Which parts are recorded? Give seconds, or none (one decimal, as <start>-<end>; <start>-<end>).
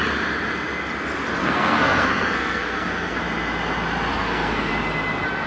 0.0-1.4; 3.2-4.1; 4.7-5.5